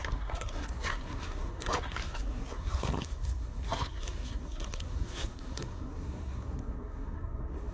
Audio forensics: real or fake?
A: fake